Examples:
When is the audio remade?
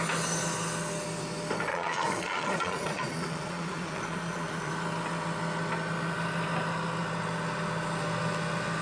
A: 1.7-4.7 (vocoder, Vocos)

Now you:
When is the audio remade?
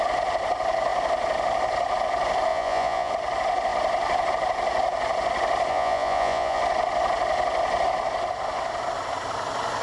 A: 2.5-3.1 (vocoder, Vocos); 5.7-6.6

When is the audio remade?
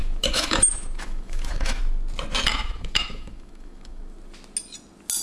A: 0.0-1.8 (autoencoder, DAC-VAE); 2.5-4.0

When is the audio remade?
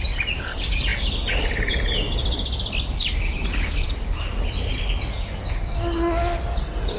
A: none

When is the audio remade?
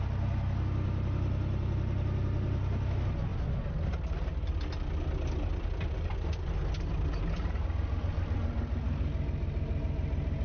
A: none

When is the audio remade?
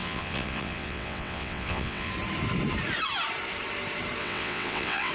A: 0.0-2.1 (vocoder, WaveNeXt); 4.2-5.1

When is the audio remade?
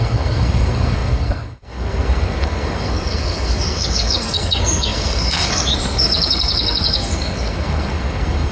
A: 0.0-8.5 (codec, SNAC)